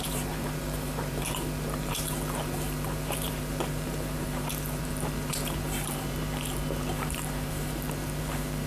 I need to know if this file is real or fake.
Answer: fake